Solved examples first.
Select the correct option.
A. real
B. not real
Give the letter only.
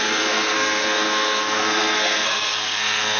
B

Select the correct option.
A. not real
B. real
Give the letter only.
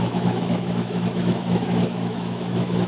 A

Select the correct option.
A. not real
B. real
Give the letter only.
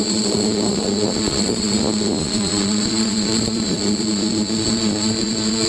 A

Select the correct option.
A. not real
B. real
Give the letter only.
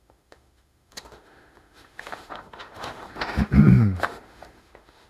A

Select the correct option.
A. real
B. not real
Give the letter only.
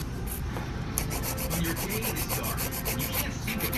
A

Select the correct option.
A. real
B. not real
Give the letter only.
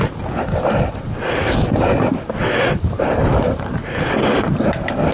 A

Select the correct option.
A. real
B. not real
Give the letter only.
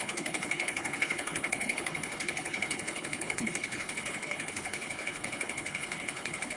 B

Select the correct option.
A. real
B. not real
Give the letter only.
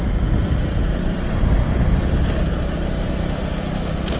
A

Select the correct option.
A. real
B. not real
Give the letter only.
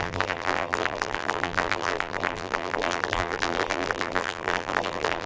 B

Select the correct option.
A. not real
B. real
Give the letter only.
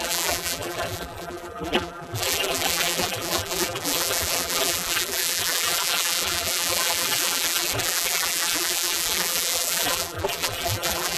A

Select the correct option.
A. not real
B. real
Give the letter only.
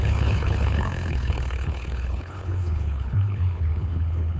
A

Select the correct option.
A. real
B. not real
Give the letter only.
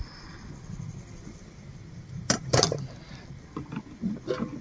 A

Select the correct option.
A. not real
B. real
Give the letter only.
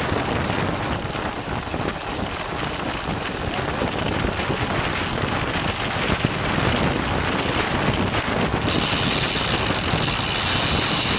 B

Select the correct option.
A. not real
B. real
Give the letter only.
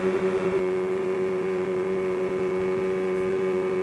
A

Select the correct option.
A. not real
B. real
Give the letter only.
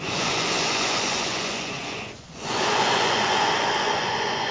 A